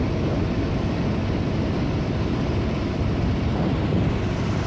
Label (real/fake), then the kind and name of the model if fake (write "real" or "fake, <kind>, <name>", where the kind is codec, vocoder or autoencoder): fake, vocoder, BigVGAN v2